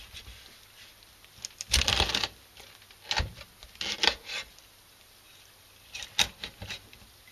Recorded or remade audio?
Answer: recorded